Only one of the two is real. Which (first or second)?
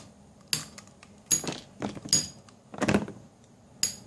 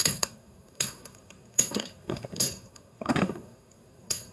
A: first